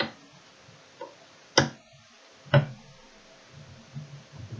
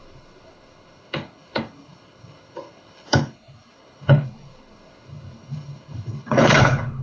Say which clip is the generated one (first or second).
second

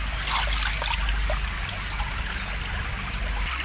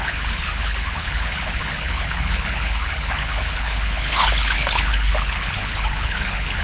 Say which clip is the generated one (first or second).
second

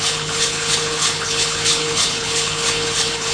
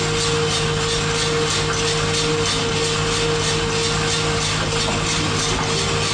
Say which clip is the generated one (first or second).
first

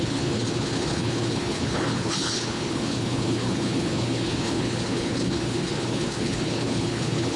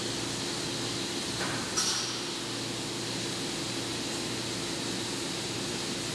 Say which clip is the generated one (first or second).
first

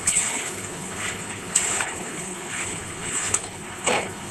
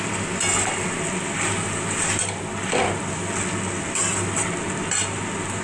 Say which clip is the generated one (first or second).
first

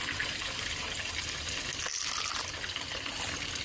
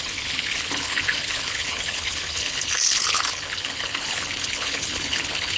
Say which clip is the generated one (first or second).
second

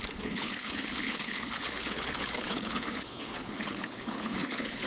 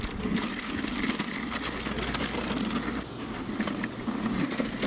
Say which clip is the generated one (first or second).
first